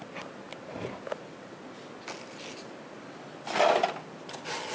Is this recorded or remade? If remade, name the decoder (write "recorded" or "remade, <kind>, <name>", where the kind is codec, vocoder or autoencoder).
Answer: recorded